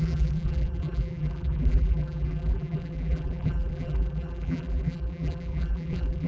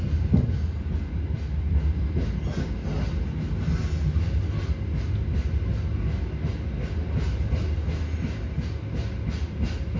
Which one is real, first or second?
second